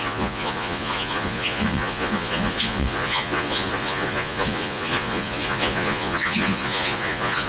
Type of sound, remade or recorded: remade